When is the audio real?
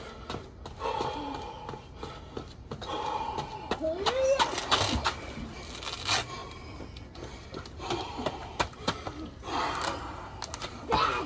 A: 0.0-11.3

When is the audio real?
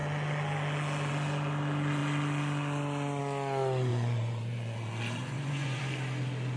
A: 0.0-3.9; 5.8-6.6